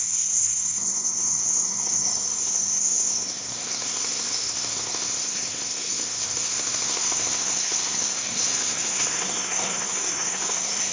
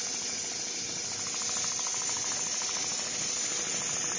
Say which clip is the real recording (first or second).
second